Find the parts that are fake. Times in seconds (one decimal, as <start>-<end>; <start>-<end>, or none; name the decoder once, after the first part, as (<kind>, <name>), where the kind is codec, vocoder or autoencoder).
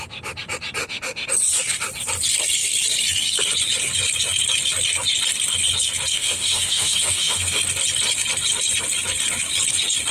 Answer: 0.8-1.3 (autoencoder, DAC-VAE); 6.1-7.6